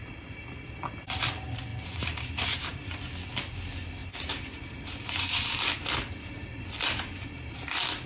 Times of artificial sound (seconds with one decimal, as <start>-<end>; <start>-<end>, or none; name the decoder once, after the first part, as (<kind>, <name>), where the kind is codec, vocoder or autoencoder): 1.7-3.0 (vocoder, BigVGAN v2); 4.0-4.8